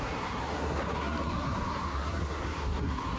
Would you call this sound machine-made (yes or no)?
yes